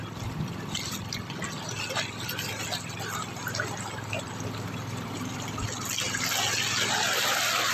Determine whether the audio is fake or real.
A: real